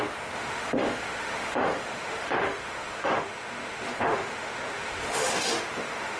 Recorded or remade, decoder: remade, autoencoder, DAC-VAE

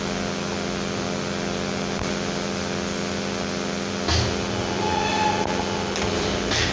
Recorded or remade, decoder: recorded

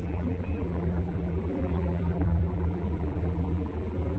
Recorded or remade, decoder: remade, vocoder, BigVGAN v2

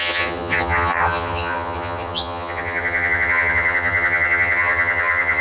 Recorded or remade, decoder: remade, vocoder, HiFi-GAN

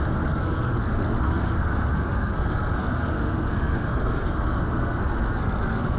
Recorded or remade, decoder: remade, codec, SNAC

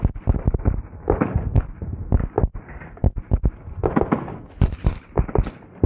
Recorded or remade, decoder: recorded